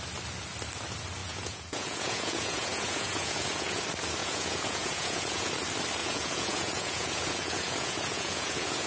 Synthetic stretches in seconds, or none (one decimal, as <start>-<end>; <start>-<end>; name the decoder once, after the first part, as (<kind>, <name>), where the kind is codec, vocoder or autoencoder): 1.2-3.8 (vocoder, Vocos); 4.2-5.5; 6.0-8.9